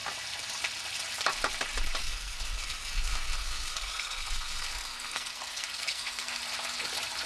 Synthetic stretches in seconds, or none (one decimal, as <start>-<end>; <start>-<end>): 2.0-6.4